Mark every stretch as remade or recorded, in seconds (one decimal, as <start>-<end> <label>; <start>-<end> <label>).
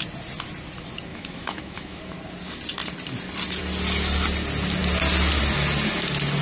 0.0-1.1 recorded; 1.1-2.0 remade; 2.0-6.4 recorded